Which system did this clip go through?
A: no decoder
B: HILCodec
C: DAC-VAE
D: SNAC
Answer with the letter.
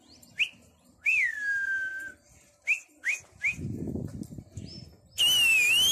A